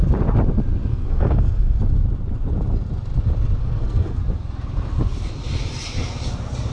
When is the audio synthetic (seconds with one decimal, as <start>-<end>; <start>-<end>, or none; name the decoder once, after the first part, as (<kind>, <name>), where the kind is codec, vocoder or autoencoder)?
0.9-1.8 (codec, SNAC); 3.6-4.2